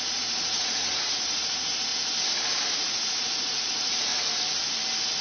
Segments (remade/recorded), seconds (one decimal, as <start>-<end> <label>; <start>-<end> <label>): 0.0-1.9 remade; 1.9-2.7 recorded; 2.7-4.1 remade; 4.1-5.2 recorded